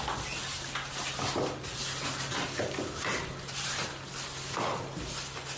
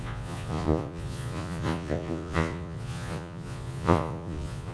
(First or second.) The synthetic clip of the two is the second